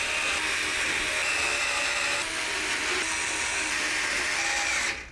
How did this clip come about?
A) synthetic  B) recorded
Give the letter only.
B